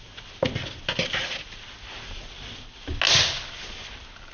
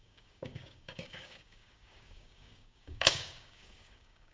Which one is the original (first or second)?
first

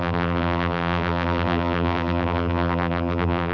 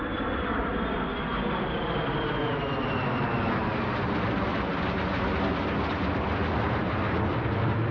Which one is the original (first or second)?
second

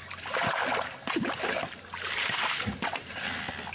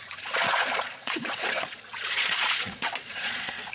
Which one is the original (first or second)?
first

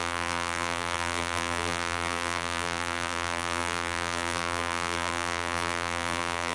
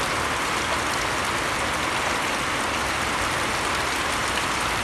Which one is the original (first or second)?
second